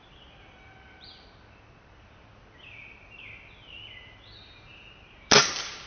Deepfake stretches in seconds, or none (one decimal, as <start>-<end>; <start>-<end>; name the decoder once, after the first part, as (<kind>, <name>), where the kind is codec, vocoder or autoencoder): none